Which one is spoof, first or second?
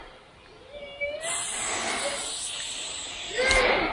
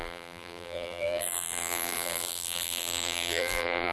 second